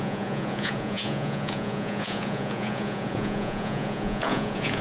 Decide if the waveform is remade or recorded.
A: remade